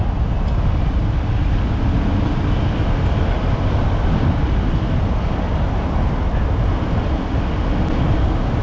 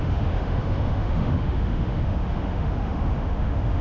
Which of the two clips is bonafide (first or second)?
first